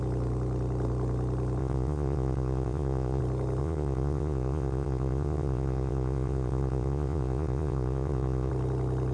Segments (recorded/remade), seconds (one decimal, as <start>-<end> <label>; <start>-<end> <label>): 0.0-1.6 recorded; 1.6-3.2 remade; 3.2-3.6 recorded; 3.6-8.5 remade; 8.5-9.1 recorded